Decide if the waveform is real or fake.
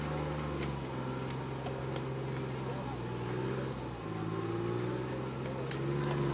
real